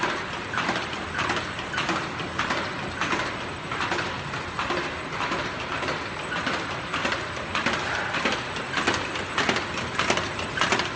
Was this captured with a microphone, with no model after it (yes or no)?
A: yes